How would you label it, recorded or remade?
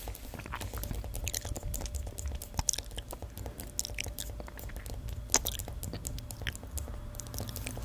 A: recorded